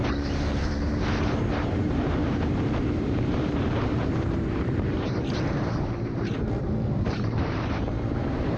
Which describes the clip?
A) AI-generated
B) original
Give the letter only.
A